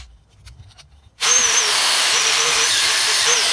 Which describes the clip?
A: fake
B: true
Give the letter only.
A